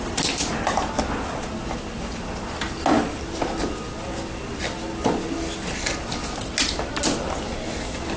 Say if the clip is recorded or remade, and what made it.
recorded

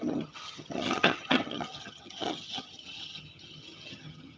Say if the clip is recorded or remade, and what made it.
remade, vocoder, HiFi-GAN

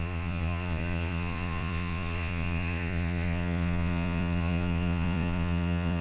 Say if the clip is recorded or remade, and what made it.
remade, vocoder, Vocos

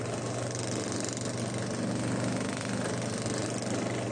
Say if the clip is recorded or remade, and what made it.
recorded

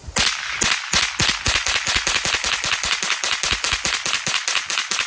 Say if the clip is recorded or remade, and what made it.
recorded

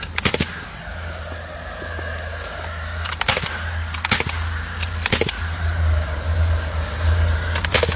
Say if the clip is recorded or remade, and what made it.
recorded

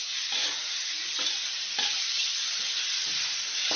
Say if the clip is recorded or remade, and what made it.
recorded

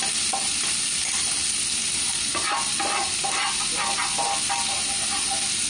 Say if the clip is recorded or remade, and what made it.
recorded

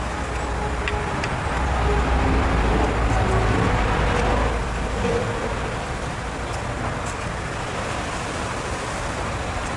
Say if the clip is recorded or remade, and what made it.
recorded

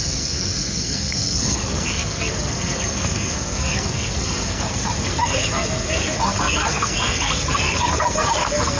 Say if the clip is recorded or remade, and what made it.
remade, codec, SNAC